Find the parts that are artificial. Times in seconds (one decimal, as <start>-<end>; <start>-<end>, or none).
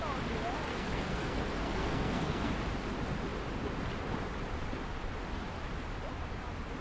0.7-2.5